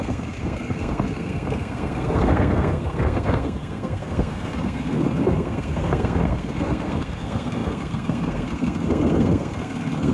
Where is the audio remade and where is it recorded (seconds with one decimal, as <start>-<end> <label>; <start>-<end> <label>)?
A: 0.0-10.1 remade